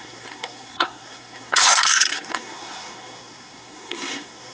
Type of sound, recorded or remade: remade